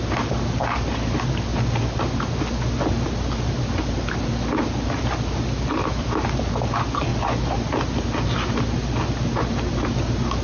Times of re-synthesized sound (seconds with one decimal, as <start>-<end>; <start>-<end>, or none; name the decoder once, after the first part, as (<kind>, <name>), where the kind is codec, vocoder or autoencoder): none